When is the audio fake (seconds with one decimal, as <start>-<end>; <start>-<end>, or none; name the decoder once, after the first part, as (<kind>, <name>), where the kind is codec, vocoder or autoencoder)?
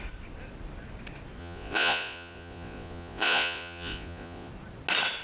1.4-4.5 (vocoder, Vocos)